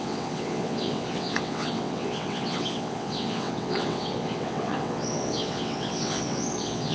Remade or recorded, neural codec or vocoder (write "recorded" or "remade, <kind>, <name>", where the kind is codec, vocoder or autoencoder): remade, vocoder, WaveNeXt